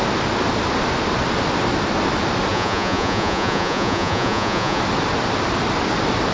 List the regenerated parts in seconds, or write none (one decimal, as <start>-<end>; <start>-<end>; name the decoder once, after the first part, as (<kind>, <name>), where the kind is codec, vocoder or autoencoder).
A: 2.5-4.8 (vocoder, Vocos)